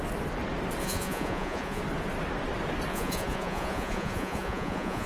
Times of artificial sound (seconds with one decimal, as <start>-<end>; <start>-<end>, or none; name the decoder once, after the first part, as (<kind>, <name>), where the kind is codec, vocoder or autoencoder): 0.8-1.8 (vocoder, Vocos); 2.9-5.1